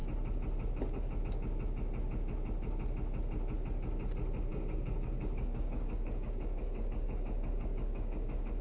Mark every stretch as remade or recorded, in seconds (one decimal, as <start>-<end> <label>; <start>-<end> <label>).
0.0-4.5 recorded; 4.5-8.6 remade